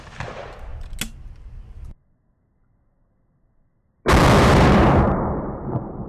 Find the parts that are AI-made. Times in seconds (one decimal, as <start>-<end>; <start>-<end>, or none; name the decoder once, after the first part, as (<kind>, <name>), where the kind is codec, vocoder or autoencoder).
0.0-0.7 (vocoder, BigVGAN v2); 4.4-6.1